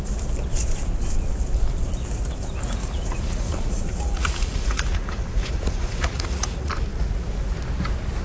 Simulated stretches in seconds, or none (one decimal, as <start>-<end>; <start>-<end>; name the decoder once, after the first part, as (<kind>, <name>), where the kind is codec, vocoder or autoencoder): 2.8-6.7 (vocoder, Vocos)